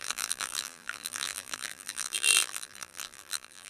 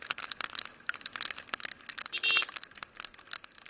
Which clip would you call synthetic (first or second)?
first